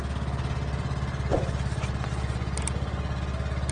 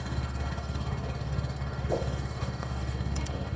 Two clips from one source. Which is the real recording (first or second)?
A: first